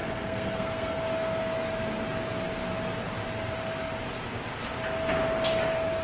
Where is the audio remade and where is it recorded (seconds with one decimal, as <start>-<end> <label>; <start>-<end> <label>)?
0.0-1.0 remade; 1.0-6.0 recorded